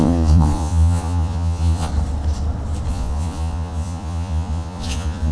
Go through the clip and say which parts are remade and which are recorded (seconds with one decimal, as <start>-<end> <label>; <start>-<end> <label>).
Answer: 0.0-1.9 remade; 1.9-2.9 recorded; 2.9-5.3 remade